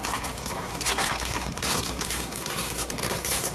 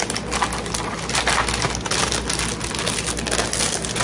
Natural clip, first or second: second